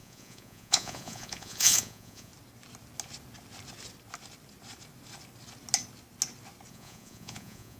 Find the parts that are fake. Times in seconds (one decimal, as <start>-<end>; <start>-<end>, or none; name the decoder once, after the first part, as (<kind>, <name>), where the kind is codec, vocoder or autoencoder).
0.0-2.3 (vocoder, Vocos); 6.7-7.8